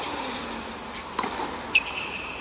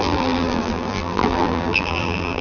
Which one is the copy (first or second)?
second